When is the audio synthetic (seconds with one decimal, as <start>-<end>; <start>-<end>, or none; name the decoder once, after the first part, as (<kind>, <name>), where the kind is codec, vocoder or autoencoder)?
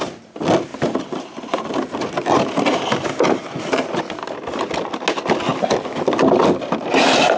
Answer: none